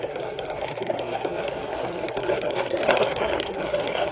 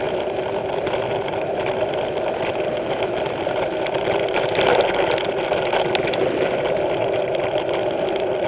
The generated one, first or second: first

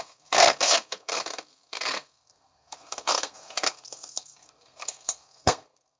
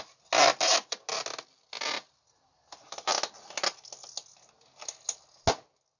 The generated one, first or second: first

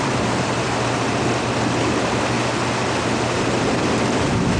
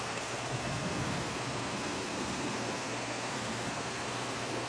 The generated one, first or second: second